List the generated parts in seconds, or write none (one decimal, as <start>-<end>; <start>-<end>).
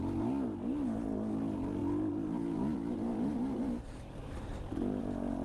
none